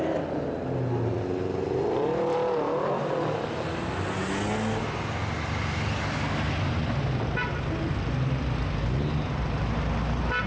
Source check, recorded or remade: recorded